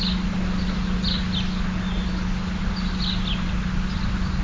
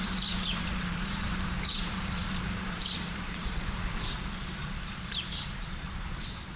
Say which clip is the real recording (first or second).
first